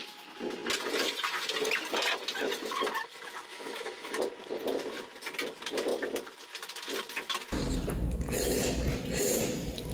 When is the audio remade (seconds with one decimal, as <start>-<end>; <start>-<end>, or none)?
3.5-4.2